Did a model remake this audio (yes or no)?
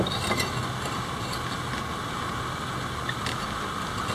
no